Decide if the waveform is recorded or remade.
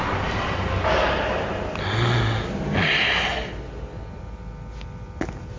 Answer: recorded